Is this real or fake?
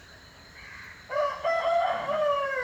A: fake